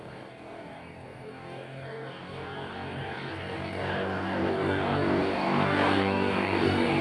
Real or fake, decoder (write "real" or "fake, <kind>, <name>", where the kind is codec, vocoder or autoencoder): fake, codec, DAC